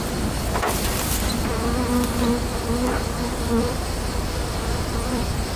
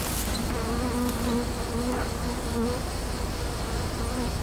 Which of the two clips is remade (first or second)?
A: first